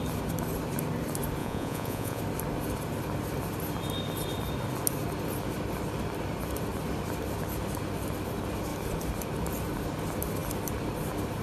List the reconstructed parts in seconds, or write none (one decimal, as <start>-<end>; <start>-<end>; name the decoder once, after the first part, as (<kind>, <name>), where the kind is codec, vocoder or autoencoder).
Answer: 1.4-2.2 (vocoder, Vocos)